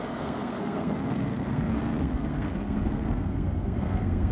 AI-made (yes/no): yes